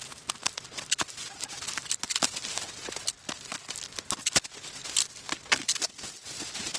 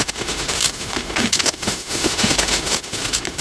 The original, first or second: first